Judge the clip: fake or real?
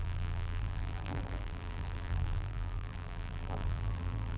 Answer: fake